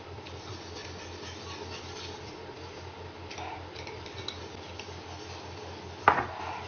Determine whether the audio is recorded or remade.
recorded